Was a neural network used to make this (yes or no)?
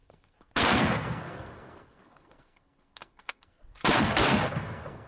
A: yes